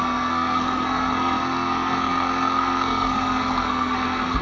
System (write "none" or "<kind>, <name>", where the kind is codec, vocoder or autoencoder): codec, SNAC